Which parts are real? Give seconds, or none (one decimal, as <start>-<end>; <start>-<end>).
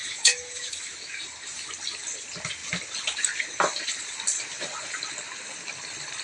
1.2-6.2